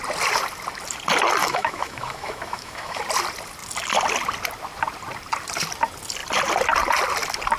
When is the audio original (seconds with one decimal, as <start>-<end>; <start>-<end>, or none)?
0.0-1.4; 3.0-7.6